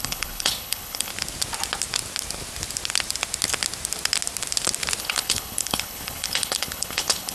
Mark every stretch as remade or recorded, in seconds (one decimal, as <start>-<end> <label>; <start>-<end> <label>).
0.0-1.1 remade; 1.1-5.0 recorded; 5.0-7.3 remade